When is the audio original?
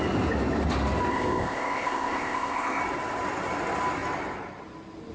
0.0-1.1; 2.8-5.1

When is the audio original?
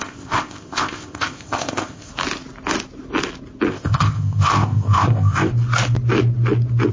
2.1-3.7; 5.5-6.9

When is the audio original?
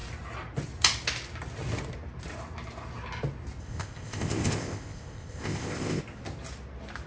0.0-3.6; 6.0-7.1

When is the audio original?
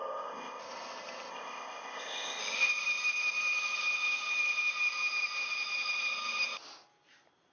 0.6-1.3; 2.4-7.5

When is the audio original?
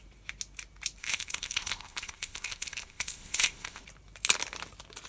0.0-1.0; 3.8-5.1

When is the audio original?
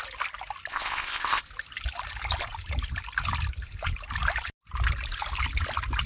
0.0-0.7; 1.4-6.1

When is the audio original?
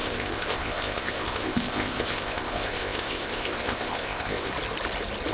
4.5-5.3